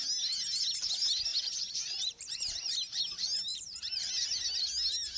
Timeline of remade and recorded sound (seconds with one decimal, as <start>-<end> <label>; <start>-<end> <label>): 0.0-1.3 recorded; 1.3-2.2 remade; 2.2-3.5 recorded; 3.5-4.1 remade; 4.1-5.2 recorded